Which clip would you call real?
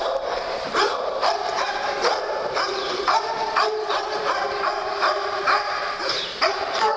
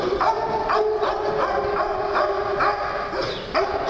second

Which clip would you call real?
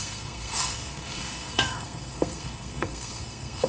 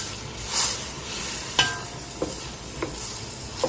second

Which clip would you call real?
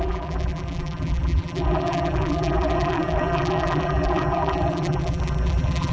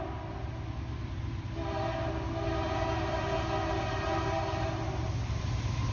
second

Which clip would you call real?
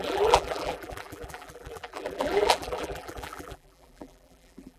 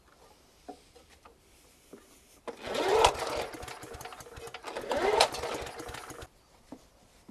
second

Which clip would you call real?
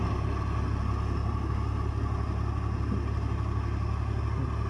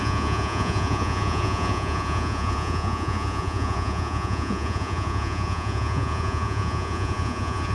first